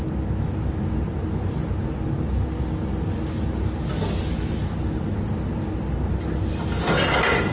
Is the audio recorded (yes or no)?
yes